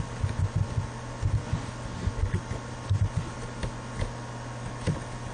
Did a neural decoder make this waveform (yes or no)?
no